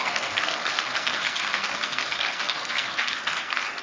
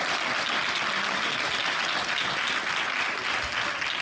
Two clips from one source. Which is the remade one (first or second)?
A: first